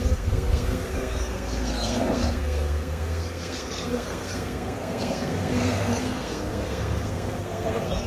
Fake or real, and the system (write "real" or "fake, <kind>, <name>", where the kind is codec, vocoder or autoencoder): fake, codec, SNAC